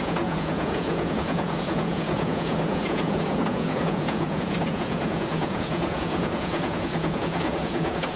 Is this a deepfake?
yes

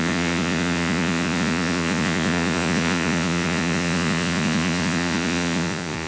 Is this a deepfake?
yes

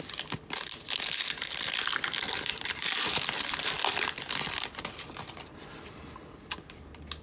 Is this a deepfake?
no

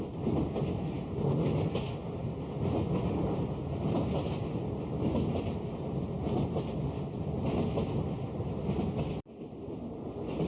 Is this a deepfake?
no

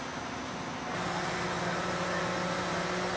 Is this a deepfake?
no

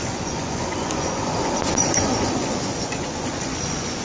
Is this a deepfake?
yes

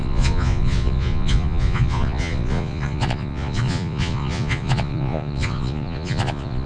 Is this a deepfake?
yes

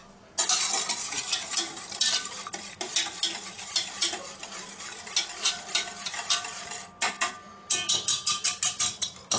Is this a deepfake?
no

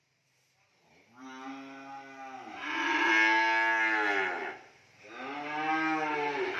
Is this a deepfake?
no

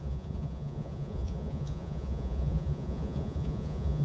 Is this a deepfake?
yes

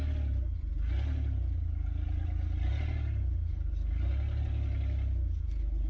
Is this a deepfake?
no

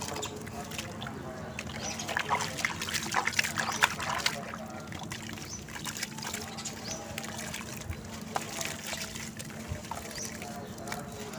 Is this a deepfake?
no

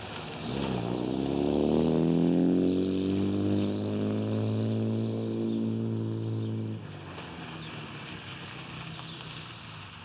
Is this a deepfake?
no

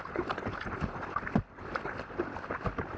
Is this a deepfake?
no